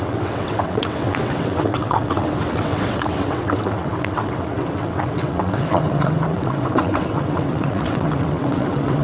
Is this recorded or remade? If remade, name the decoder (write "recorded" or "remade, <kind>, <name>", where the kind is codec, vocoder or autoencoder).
remade, vocoder, WaveNeXt